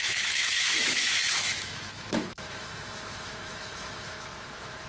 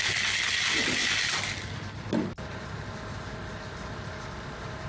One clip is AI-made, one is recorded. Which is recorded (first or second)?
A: second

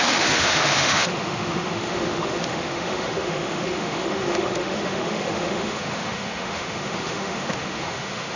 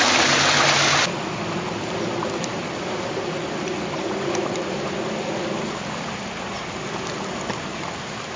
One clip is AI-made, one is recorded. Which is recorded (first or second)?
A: second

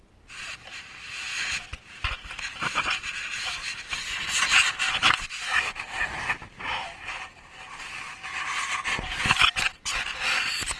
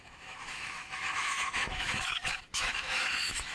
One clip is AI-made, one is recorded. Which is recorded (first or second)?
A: first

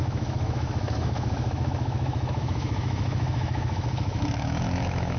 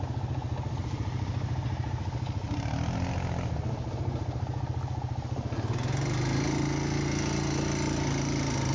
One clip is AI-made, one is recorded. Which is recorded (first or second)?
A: second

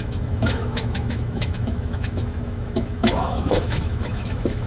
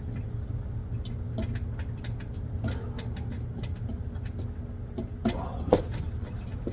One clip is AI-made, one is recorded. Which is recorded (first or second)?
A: second